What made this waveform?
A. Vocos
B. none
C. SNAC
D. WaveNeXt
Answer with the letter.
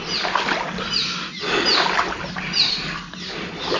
B